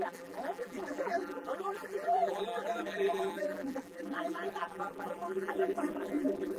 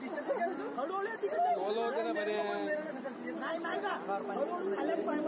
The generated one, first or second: first